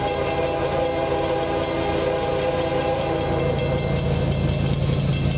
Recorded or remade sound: recorded